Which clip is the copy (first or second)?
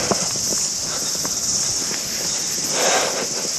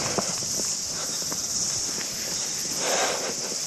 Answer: second